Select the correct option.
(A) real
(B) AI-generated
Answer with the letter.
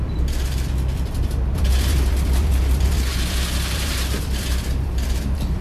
B